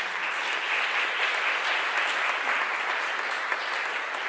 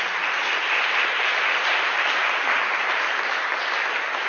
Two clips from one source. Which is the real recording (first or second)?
first